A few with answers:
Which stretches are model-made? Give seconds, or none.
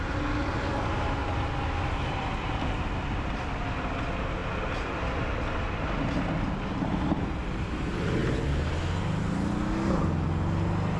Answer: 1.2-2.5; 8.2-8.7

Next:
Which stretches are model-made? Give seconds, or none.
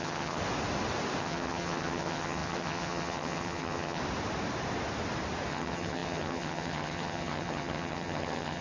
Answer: 0.0-0.4; 1.2-4.0; 5.5-8.6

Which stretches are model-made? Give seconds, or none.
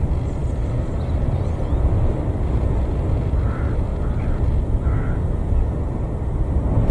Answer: 0.4-1.4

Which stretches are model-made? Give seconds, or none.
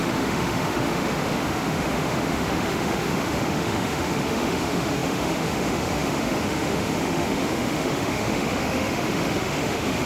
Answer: 0.0-10.1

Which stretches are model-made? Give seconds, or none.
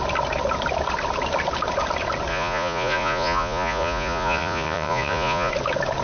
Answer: 2.3-5.5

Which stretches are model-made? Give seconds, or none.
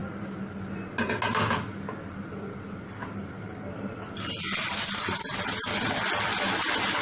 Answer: none